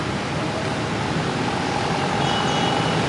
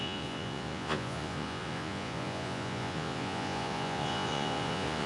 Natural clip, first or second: first